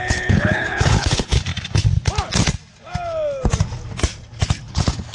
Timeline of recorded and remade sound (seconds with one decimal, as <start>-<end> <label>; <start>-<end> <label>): 0.0-1.5 remade; 1.5-4.6 recorded; 4.6-5.1 remade